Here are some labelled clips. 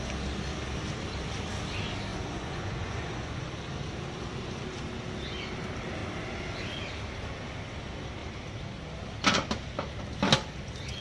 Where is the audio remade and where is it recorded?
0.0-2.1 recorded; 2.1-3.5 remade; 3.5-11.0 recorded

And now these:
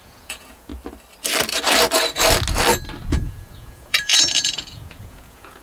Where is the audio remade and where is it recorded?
0.0-0.7 remade; 0.7-3.1 recorded; 3.1-5.6 remade

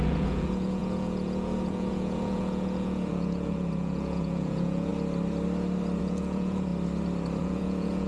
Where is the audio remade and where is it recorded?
0.0-4.9 remade; 4.9-6.0 recorded; 6.0-6.7 remade; 6.7-7.4 recorded; 7.4-8.1 remade